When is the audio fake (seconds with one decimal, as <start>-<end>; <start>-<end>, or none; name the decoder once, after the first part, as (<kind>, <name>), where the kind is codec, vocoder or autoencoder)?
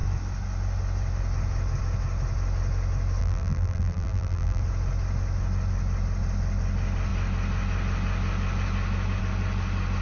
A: 3.2-4.6 (vocoder, BigVGAN v2)